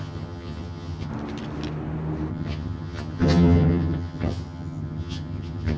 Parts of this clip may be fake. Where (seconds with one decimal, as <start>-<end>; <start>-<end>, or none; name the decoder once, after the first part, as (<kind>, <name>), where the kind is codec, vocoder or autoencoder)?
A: 0.0-1.1 (vocoder, HiFi-GAN); 2.3-5.8

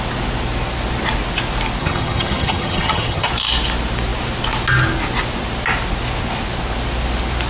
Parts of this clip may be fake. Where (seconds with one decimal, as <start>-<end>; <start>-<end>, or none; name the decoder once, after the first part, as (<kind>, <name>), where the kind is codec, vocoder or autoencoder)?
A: 1.8-3.3 (vocoder, HiFi-GAN)

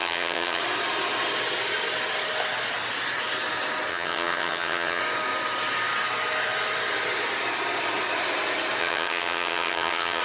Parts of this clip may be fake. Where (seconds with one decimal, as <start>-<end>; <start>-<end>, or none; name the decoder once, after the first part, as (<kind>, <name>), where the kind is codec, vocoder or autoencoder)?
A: 0.0-0.6 (vocoder, HiFi-GAN); 3.9-5.0; 8.8-10.2

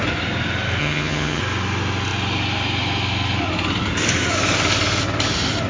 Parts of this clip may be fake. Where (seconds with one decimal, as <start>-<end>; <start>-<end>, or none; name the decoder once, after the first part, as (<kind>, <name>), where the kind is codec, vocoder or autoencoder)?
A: 0.8-1.4 (vocoder, HiFi-GAN)

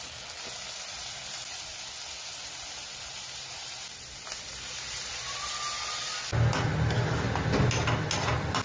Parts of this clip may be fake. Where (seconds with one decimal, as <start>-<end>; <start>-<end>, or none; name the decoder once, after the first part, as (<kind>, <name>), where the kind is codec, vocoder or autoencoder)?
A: none

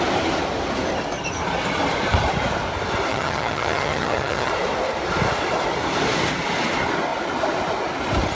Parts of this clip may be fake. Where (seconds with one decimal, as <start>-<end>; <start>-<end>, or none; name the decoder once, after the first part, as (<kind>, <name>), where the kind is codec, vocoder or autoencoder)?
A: 3.1-4.5 (vocoder, HiFi-GAN)

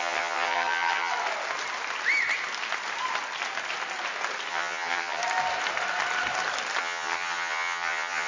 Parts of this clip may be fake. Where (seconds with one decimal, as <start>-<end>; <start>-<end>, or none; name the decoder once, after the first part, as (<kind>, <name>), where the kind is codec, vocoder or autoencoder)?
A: 0.0-1.1 (vocoder, HiFi-GAN); 4.5-5.2; 6.8-8.3

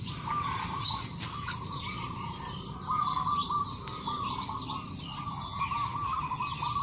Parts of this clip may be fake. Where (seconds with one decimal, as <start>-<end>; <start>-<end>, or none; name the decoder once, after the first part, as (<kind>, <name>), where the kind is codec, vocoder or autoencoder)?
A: none